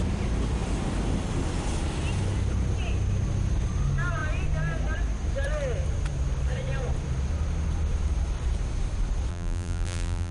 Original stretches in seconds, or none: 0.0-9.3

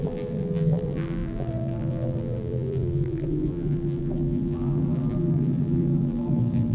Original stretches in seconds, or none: none

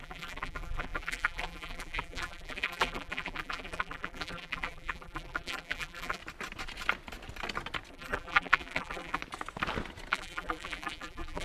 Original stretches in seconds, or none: 6.2-7.9; 9.2-10.1

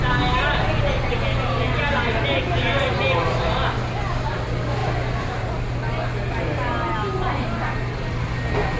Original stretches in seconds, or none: 0.0-4.8; 5.5-8.8

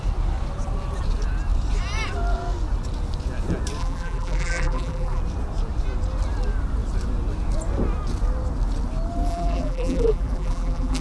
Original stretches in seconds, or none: 0.0-3.8; 5.2-9.3